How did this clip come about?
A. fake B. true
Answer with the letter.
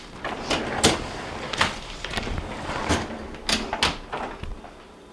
B